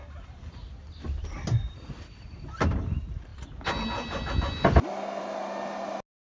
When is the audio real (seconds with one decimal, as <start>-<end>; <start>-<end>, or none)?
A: 0.0-6.2